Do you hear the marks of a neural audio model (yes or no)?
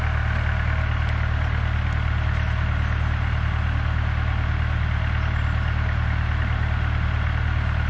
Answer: no